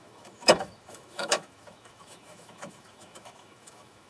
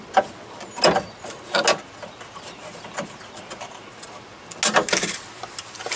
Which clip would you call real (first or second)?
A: second